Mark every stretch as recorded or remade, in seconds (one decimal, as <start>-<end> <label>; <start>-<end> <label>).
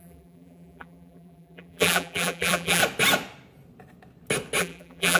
0.0-2.8 remade; 2.8-4.6 recorded; 4.6-5.2 remade